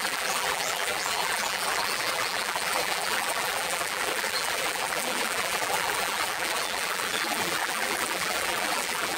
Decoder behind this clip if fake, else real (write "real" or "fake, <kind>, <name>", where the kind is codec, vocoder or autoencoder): fake, vocoder, BigVGAN v2